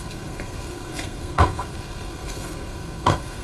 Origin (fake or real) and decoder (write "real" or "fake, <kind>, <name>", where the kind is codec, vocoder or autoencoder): fake, codec, SNAC